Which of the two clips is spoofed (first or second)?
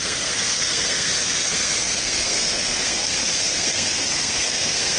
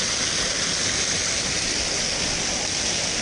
first